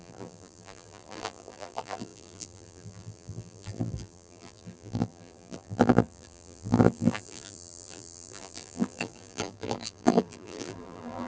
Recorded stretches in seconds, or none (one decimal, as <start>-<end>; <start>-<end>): none